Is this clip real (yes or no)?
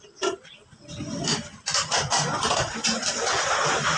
yes